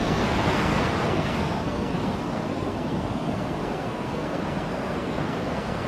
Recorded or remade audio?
remade